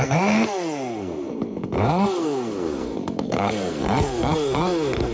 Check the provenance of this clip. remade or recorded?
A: remade